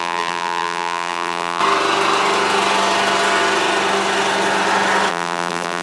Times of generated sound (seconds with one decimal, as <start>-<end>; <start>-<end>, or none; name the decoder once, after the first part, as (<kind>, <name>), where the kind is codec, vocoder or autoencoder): 0.0-1.6 (vocoder, BigVGAN v2); 5.1-5.8